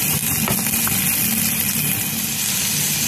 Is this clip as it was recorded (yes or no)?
yes